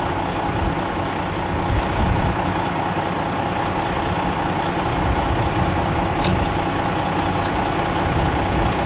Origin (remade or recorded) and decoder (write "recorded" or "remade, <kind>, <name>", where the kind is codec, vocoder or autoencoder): recorded